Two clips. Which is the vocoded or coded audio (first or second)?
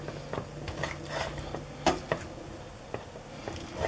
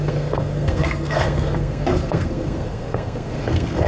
second